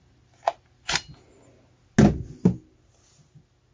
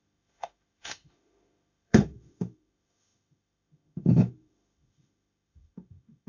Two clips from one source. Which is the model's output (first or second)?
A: second